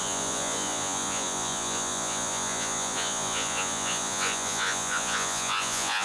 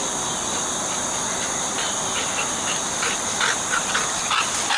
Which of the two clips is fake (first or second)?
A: first